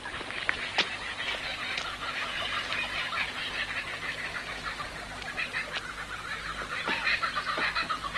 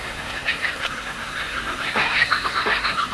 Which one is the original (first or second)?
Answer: first